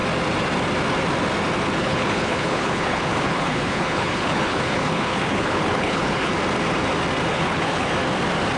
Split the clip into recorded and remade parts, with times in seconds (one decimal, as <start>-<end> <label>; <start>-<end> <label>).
0.0-1.8 recorded; 1.8-6.3 remade; 6.3-7.3 recorded; 7.3-7.9 remade; 7.9-8.6 recorded